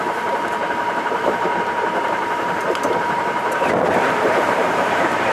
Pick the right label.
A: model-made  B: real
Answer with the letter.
A